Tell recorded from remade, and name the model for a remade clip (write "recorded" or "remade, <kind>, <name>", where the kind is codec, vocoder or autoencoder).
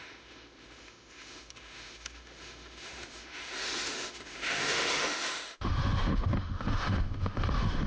remade, autoencoder, DAC-VAE